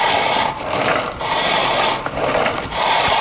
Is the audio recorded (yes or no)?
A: yes